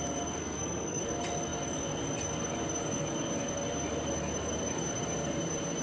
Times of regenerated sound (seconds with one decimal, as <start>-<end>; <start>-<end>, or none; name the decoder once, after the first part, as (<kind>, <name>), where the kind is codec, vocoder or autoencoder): 0.4-1.0 (codec, SNAC)